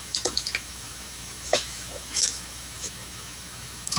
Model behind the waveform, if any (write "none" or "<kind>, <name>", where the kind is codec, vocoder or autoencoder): autoencoder, DAC-VAE